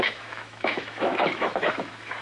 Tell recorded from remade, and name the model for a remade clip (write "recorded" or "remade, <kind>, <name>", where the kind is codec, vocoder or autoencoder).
remade, autoencoder, DAC-VAE